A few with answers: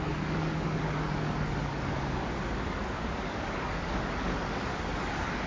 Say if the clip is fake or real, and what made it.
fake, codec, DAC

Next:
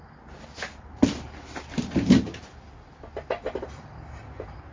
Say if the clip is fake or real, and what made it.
real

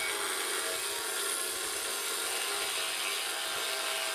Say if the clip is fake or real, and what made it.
real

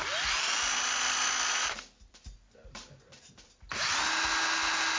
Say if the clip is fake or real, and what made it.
real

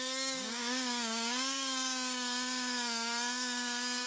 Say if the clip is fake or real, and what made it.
fake, codec, DAC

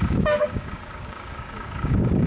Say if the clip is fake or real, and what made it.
fake, codec, DAC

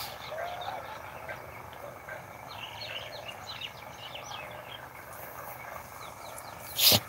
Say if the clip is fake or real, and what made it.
real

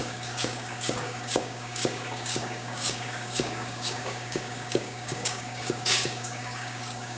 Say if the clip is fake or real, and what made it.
fake, codec, DAC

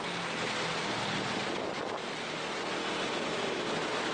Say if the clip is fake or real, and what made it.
real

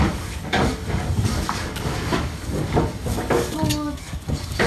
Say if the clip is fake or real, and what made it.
fake, codec, DAC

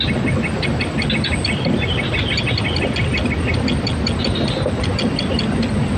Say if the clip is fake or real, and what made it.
real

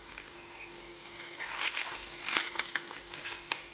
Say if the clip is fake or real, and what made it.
fake, codec, DAC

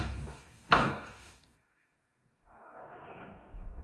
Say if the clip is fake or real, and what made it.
fake, codec, DAC